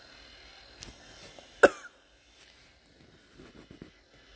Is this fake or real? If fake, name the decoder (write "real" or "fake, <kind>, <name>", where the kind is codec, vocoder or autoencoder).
real